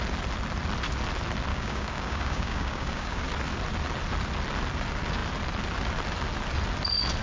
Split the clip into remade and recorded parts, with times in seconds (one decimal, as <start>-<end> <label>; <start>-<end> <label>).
0.0-1.5 recorded; 1.5-3.2 remade; 3.2-7.2 recorded